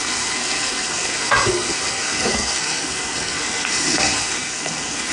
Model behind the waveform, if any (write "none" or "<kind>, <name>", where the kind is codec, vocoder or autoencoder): codec, SNAC